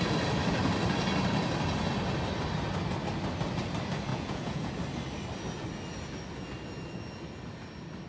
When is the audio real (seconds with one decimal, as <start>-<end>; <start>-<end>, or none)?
0.0-4.1; 4.7-8.1